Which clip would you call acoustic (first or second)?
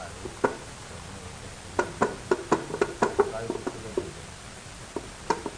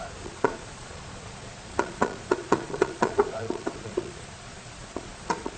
first